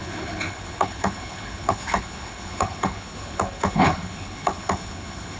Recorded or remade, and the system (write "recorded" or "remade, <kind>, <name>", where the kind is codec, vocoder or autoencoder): remade, codec, HILCodec